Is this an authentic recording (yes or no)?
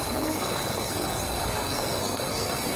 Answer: no